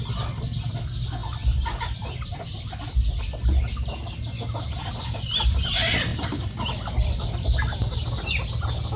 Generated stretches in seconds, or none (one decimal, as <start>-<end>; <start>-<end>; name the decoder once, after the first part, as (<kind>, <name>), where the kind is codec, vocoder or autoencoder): none